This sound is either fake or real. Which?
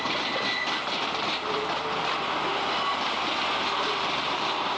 real